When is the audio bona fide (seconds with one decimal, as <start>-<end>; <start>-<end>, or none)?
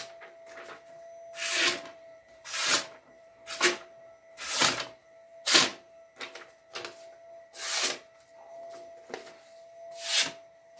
0.0-1.9; 3.3-10.8